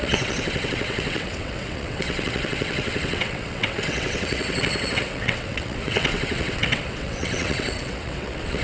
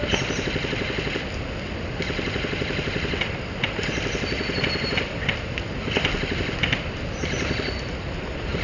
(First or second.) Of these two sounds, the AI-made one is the first